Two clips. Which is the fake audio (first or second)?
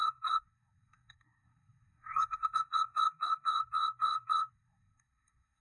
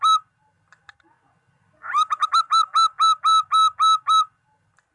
first